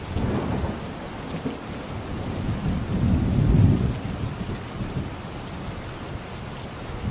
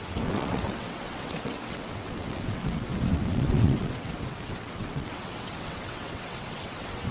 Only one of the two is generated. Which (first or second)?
second